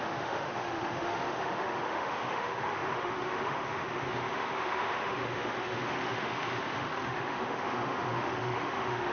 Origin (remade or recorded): remade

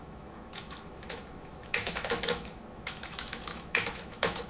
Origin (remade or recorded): remade